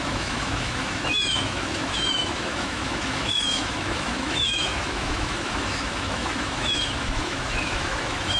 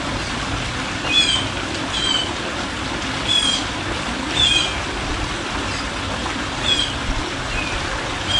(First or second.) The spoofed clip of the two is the first